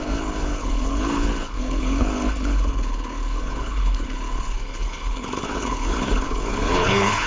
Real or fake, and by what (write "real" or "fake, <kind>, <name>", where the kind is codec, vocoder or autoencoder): fake, codec, HILCodec